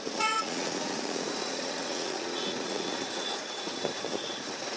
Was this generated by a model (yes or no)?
yes